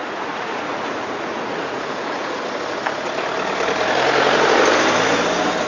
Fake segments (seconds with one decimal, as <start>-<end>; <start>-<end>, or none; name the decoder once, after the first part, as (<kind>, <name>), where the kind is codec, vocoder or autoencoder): 0.0-2.4 (vocoder, Vocos)